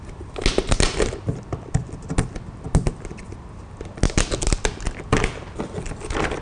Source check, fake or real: real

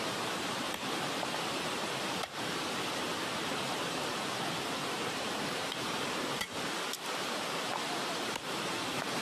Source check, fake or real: fake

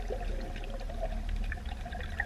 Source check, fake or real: real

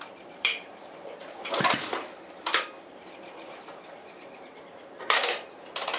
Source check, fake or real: fake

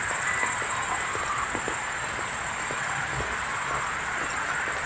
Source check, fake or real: real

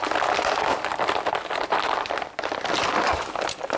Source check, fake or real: fake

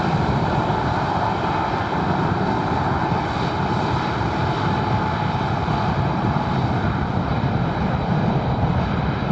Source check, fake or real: fake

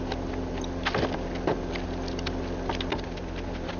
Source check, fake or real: real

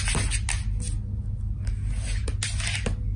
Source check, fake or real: real